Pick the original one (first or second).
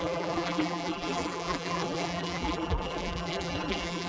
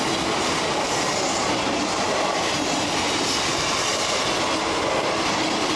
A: second